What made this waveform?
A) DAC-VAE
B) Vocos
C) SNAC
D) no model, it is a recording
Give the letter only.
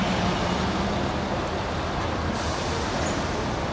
D